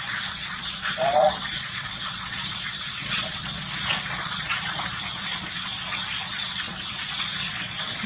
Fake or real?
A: fake